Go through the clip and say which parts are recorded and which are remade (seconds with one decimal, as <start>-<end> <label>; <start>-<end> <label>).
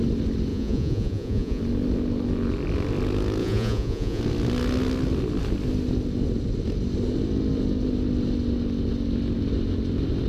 0.0-0.5 recorded; 0.5-1.6 remade; 1.6-3.4 recorded; 3.4-4.2 remade; 4.2-10.3 recorded